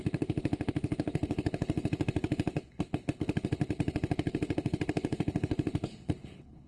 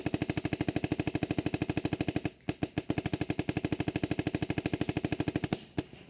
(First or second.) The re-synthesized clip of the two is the first